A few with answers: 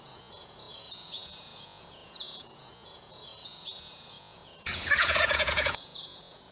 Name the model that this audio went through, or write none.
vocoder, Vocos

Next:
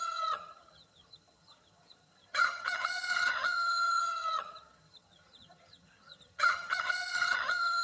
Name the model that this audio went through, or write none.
vocoder, HiFi-GAN